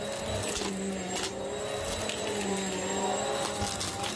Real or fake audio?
real